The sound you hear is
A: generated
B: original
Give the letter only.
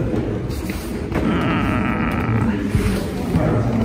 B